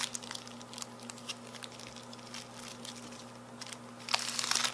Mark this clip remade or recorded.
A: recorded